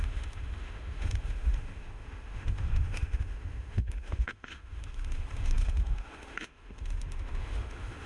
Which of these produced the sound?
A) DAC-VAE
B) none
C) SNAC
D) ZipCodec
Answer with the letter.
A